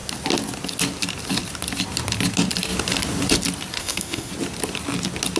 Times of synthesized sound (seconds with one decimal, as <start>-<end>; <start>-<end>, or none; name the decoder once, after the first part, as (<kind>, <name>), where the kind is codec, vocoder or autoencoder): 3.8-4.3 (autoencoder, DAC-VAE)

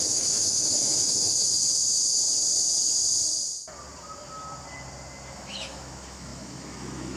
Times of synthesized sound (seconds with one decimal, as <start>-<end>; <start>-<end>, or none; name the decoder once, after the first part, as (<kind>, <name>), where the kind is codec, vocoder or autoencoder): 0.0-2.2 (autoencoder, DAC-VAE); 5.3-7.2

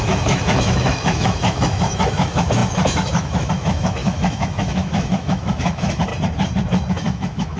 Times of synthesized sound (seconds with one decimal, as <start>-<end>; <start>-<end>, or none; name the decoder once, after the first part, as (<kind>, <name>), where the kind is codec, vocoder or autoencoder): 0.0-6.1 (autoencoder, DAC-VAE); 6.9-7.6

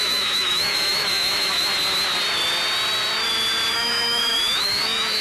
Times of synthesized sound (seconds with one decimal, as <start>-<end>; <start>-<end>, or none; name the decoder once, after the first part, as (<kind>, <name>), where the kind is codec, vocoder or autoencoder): 0.0-1.7 (autoencoder, DAC-VAE); 3.7-5.2

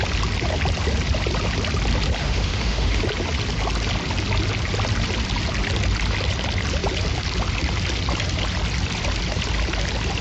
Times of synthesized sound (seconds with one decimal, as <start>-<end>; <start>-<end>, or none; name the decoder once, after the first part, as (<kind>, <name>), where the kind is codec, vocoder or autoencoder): 2.2-3.0 (autoencoder, DAC-VAE)

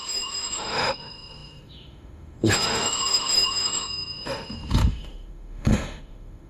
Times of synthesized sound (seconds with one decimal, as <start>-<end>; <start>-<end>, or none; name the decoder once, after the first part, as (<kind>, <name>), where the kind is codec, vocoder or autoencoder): 0.0-6.5 (autoencoder, DAC-VAE)